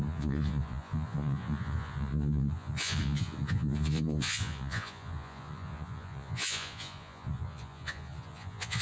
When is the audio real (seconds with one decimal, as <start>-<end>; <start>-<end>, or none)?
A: none